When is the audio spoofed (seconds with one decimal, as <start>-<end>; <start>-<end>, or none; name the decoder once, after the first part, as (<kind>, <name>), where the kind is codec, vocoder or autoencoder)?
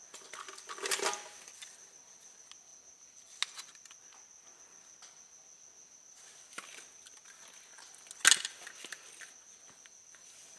none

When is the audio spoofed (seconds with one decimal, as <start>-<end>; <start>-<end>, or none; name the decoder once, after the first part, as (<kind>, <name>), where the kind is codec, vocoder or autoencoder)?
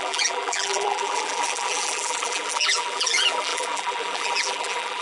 0.0-5.0 (vocoder, BigVGAN v2)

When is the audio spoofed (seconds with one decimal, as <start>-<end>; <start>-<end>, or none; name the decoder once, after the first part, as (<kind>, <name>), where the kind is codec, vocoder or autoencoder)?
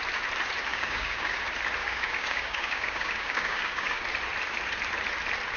0.7-1.4 (codec, DAC); 1.8-4.0